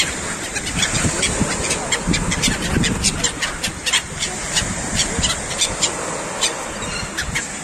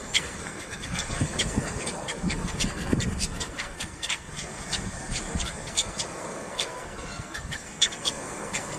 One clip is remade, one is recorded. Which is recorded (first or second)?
first